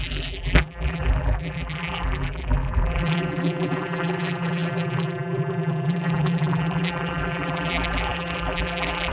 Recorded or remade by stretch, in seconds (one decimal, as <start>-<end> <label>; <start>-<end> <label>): 0.0-9.1 remade